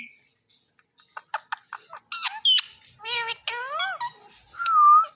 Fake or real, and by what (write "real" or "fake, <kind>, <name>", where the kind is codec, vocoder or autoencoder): real